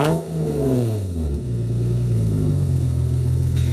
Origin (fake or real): fake